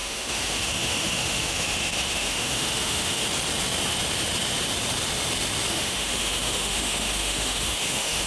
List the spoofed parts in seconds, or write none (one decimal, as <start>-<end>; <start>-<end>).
0.0-3.2; 5.7-8.3